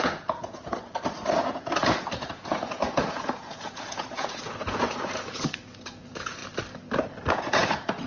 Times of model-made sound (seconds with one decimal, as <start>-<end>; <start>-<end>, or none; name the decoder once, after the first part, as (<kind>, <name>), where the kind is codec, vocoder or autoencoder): 0.0-0.7 (vocoder, Vocos); 1.3-6.4; 7.3-8.1